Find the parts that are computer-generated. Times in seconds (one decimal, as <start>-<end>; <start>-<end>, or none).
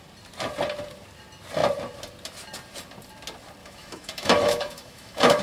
3.6-5.4